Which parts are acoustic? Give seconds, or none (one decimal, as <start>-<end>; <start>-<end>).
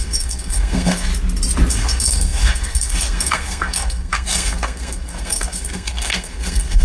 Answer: 1.1-1.7